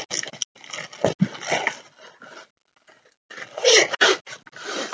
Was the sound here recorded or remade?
recorded